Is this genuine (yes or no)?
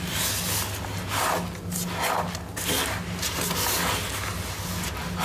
yes